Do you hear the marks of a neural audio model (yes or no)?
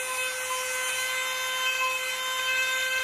no